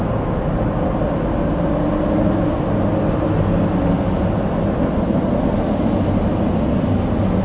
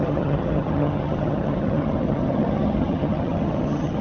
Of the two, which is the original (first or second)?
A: first